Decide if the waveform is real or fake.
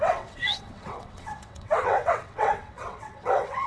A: fake